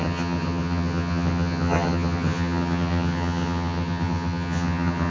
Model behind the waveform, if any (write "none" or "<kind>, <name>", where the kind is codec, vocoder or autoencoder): vocoder, HiFi-GAN